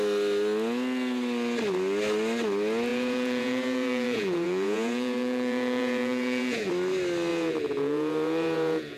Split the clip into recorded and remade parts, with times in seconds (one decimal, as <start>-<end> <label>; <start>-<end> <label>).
0.0-2.9 recorded; 2.9-6.7 remade; 6.7-7.3 recorded; 7.3-9.0 remade